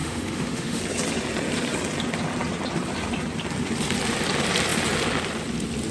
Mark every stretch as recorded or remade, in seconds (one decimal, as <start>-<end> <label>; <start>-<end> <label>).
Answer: 0.0-0.8 remade; 0.8-5.9 recorded